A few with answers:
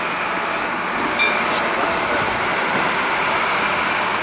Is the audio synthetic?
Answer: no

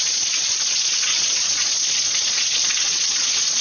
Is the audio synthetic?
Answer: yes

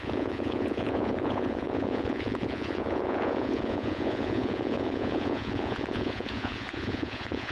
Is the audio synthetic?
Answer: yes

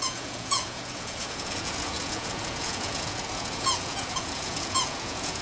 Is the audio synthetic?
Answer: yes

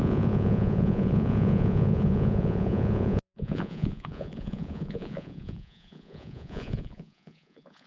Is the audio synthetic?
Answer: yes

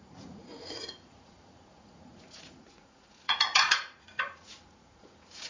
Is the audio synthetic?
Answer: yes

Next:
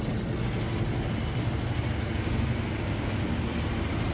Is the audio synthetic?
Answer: no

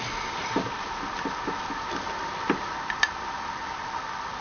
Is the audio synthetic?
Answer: no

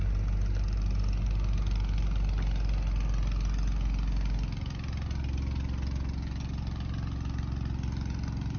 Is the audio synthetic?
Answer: no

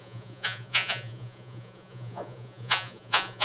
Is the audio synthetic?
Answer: yes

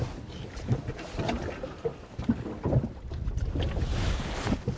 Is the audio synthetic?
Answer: no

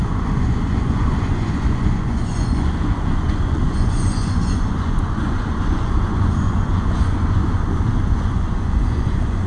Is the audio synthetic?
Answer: yes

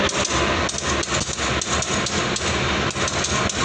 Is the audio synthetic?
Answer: no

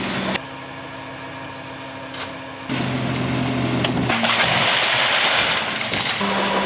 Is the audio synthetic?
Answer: no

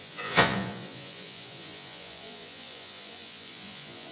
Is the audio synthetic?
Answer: yes